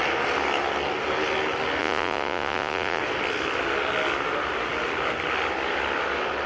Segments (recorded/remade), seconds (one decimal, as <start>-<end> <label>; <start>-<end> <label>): 0.0-1.8 recorded; 1.8-3.0 remade; 3.0-6.5 recorded